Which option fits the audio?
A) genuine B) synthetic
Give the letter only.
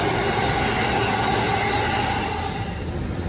A